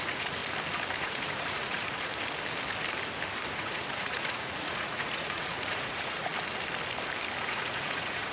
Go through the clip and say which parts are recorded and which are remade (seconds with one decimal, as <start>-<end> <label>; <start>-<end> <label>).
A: 0.0-0.4 remade; 0.4-1.0 recorded; 1.0-2.1 remade; 2.1-3.5 recorded; 3.5-6.3 remade; 6.3-7.4 recorded; 7.4-8.3 remade